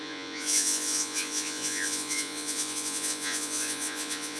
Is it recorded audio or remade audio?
remade